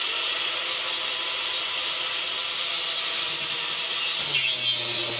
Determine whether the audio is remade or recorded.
recorded